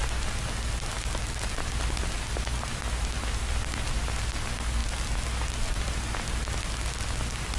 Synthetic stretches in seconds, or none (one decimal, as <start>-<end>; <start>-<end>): none